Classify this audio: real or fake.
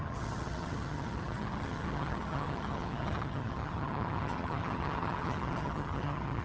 fake